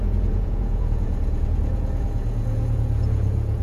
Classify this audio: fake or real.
fake